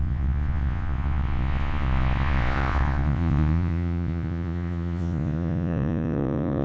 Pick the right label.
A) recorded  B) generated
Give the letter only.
B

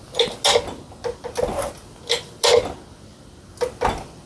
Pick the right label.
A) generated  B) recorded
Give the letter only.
B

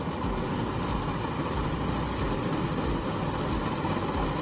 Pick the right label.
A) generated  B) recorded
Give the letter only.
B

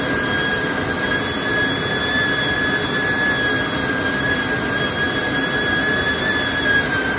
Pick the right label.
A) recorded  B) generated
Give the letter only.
A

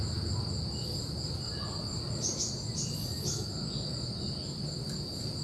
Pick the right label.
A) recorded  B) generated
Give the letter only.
A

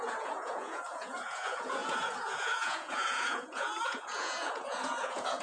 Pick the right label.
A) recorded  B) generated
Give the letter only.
B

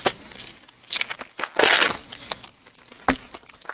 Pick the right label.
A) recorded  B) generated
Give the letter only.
A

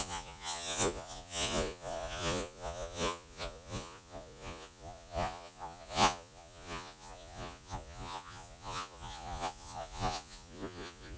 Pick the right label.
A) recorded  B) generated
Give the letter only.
B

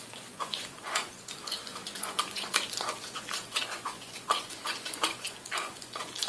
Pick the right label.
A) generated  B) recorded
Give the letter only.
A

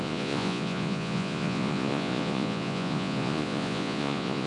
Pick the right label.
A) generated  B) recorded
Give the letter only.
A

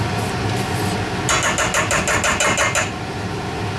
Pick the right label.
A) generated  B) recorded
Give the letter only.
B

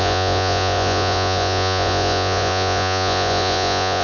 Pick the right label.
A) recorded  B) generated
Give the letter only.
B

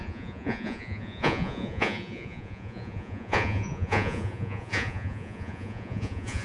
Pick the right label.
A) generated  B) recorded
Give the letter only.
A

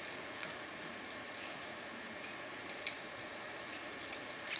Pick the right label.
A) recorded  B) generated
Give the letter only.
B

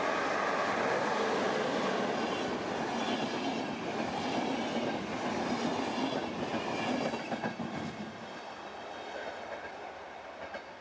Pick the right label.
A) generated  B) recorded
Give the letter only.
B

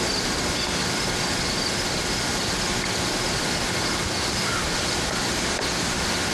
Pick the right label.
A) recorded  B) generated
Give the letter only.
A